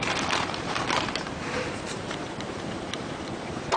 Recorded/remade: remade